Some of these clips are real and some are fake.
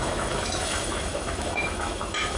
fake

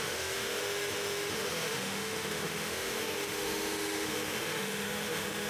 fake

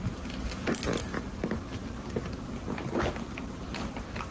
real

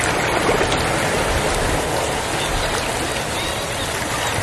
real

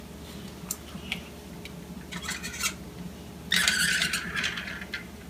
real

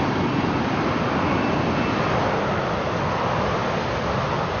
real